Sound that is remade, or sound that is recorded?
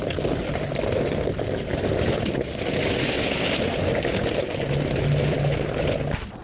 recorded